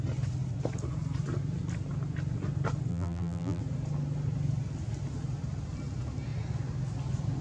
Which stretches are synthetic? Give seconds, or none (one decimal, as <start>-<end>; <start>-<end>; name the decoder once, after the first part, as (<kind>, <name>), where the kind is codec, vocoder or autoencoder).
2.9-3.6 (vocoder, BigVGAN v2)